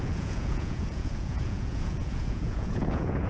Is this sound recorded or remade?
remade